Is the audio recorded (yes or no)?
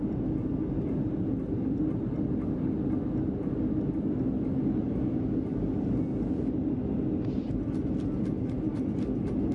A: yes